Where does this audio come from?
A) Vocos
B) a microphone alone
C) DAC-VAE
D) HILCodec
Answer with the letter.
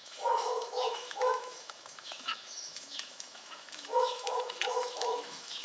C